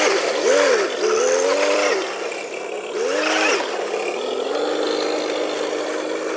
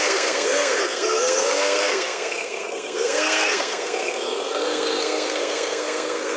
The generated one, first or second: second